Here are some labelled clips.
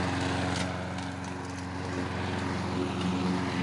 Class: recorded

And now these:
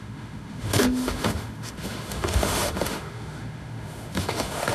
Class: remade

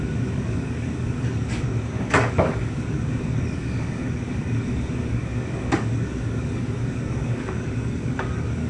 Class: remade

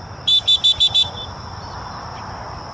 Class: recorded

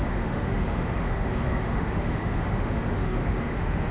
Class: remade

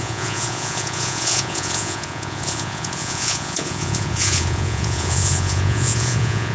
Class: remade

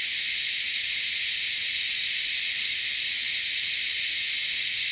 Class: recorded